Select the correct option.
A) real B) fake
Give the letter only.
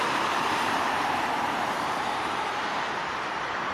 B